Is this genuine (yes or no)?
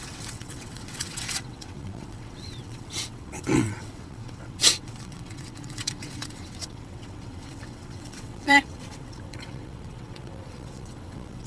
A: no